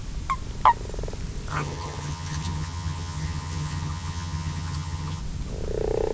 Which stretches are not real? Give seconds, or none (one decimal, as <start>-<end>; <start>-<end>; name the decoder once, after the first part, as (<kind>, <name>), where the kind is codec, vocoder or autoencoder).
1.5-5.2 (vocoder, HiFi-GAN)

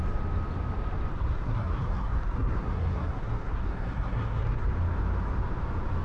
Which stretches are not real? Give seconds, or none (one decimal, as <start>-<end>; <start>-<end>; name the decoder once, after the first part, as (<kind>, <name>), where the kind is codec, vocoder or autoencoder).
1.1-4.7 (codec, SNAC)

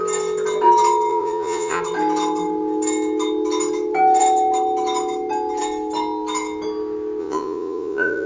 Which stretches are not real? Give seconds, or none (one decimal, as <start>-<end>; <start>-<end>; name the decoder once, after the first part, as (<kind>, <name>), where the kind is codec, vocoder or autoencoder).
1.1-1.8 (vocoder, Vocos); 7.2-8.3

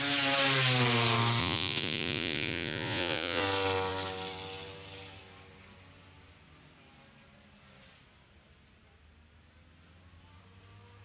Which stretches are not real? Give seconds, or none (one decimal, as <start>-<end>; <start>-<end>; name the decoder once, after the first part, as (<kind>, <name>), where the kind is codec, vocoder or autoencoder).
1.4-3.4 (vocoder, Vocos)

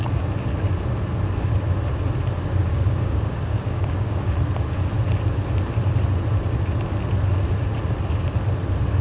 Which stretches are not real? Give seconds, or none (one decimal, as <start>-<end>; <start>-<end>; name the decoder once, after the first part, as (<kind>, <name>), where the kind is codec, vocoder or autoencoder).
2.7-4.3 (codec, DAC)

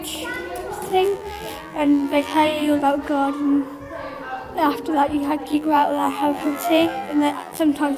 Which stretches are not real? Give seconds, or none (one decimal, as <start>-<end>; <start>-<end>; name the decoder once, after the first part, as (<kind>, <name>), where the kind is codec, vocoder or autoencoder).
0.9-2.8 (vocoder, BigVGAN v2); 5.5-7.6

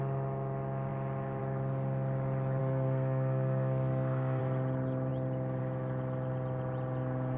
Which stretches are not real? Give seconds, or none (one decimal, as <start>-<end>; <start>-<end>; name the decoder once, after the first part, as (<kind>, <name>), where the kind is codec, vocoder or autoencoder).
2.6-4.4 (codec, SNAC)

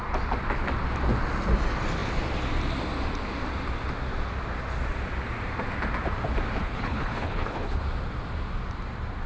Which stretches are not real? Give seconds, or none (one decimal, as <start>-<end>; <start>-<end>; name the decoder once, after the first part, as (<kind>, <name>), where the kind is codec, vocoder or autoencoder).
6.6-7.8 (codec, HILCodec)